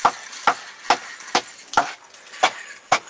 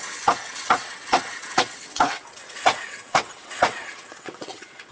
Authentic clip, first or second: first